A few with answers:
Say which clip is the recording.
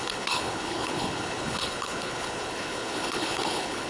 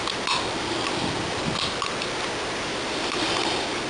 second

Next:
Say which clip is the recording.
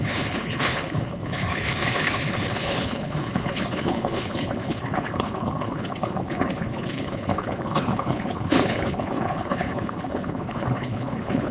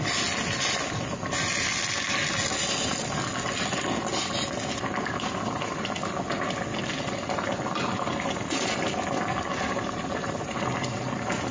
second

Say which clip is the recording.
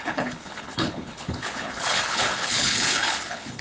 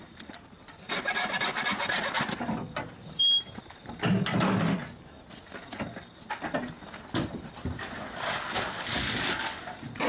second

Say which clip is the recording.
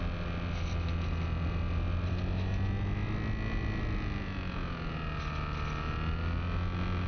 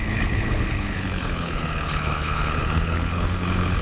first